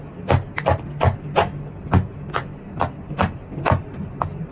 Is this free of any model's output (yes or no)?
yes